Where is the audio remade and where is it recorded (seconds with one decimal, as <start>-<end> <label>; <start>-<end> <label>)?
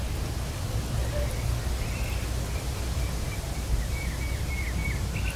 0.0-5.4 recorded